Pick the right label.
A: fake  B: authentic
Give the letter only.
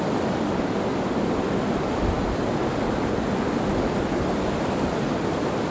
B